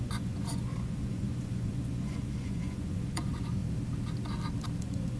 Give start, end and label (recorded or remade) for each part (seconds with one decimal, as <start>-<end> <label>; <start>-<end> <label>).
0.0-3.6 remade; 3.6-4.8 recorded; 4.8-5.2 remade